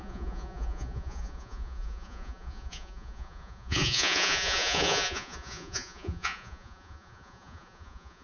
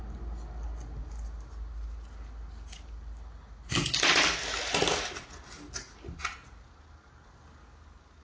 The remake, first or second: first